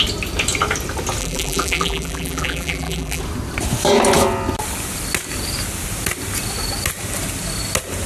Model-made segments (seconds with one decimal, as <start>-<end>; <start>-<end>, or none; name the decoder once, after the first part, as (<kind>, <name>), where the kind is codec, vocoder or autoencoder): 1.2-3.2 (vocoder, BigVGAN v2)

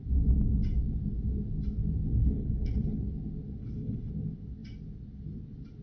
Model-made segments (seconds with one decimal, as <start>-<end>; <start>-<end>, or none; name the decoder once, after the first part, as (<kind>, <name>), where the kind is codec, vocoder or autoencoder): 2.2-3.0 (codec, HILCodec); 3.6-4.1